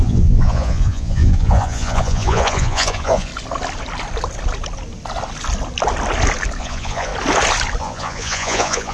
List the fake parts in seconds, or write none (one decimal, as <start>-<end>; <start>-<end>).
0.0-3.3; 6.6-7.1; 7.8-8.9